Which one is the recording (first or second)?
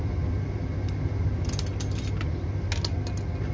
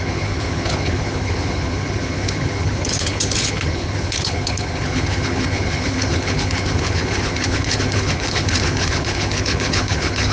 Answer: first